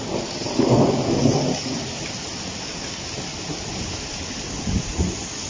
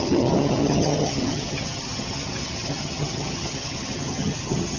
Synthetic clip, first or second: second